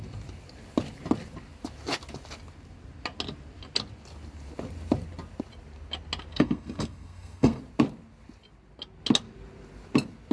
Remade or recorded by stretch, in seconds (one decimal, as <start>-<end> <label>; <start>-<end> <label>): 0.0-6.3 recorded; 6.3-7.6 remade; 7.6-10.3 recorded